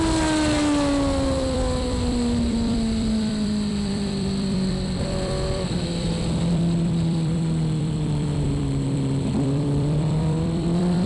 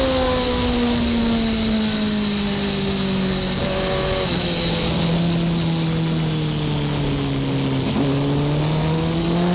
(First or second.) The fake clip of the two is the first